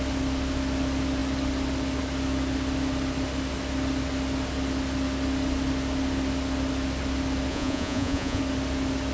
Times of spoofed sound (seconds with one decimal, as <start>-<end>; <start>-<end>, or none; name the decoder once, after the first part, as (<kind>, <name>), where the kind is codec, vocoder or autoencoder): 7.5-8.4 (vocoder, Vocos)